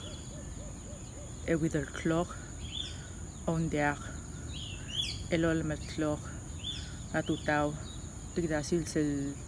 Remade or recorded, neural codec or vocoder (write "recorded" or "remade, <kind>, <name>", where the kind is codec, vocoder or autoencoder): recorded